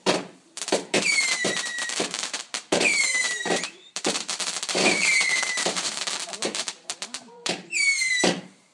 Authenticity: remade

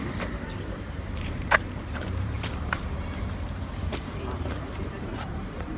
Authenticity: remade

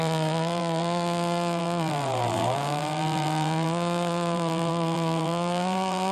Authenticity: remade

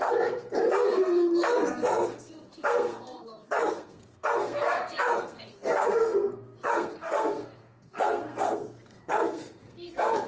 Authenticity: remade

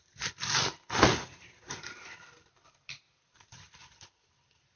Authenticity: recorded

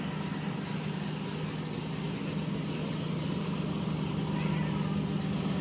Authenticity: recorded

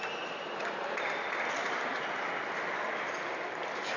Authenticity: recorded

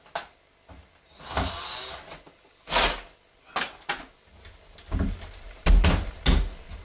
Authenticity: recorded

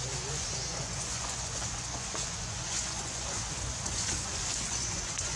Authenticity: remade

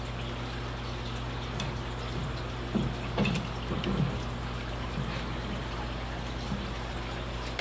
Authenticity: recorded